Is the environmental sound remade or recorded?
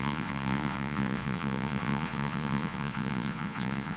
remade